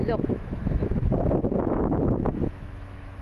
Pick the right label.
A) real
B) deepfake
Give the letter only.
B